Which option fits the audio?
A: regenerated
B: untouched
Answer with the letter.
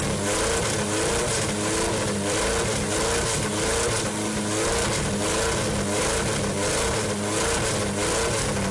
B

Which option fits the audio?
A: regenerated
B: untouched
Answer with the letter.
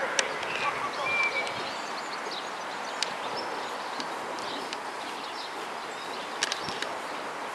B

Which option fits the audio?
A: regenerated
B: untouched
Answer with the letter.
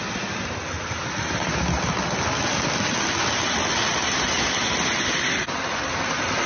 B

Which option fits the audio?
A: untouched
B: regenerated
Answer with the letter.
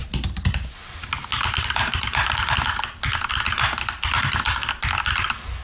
A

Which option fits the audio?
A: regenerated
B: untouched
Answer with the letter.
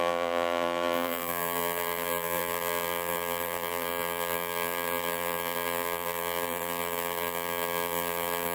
A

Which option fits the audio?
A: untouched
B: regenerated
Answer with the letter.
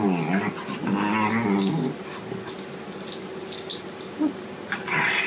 A